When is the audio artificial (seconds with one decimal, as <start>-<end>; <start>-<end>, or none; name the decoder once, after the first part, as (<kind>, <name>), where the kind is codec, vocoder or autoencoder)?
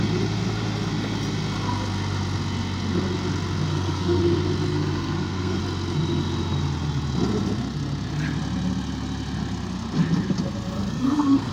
3.7-4.2 (codec, SNAC); 4.7-5.6; 10.8-11.5